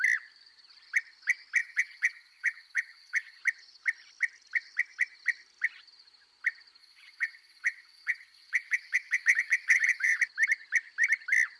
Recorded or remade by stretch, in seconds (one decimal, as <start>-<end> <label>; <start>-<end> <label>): 0.0-1.6 recorded; 1.6-3.4 remade; 3.4-6.8 recorded; 6.8-10.2 remade; 10.2-11.6 recorded